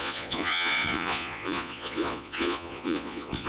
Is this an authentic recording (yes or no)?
no